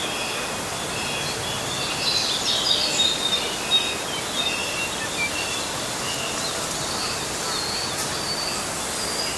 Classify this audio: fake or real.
real